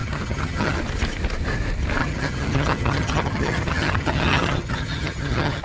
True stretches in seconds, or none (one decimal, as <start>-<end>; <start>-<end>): 0.8-2.0